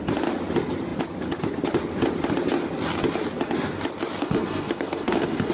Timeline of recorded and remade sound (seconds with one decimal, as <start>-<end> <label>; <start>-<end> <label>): 0.0-4.2 recorded; 4.2-5.5 remade